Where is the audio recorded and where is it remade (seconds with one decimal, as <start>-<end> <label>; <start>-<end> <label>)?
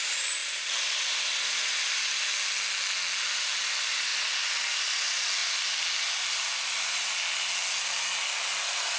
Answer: 0.0-9.0 recorded